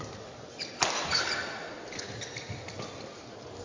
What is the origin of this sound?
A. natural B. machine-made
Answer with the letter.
A